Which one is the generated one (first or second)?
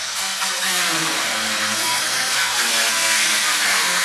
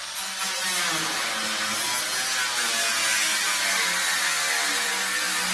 first